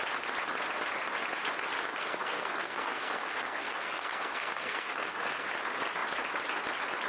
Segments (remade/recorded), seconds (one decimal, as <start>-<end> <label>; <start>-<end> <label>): 0.0-1.9 recorded; 1.9-5.5 remade; 5.5-7.1 recorded